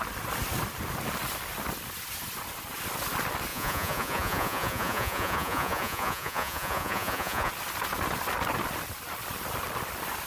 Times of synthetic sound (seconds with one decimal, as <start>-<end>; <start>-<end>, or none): 3.5-7.5